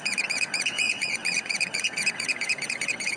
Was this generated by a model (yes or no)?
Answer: yes